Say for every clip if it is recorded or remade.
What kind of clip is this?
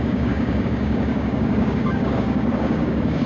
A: remade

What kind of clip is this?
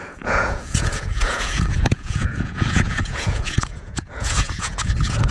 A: remade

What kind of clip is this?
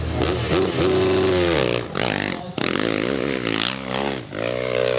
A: recorded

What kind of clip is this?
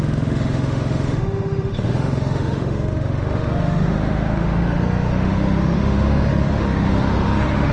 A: remade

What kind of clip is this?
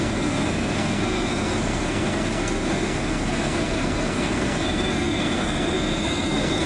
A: remade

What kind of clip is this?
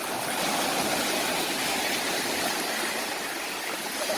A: recorded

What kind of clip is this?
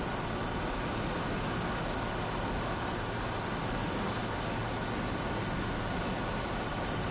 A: recorded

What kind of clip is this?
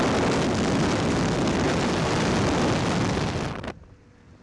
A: recorded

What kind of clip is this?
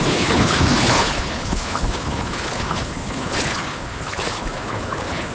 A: remade